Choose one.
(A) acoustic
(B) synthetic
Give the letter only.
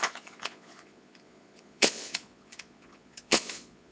B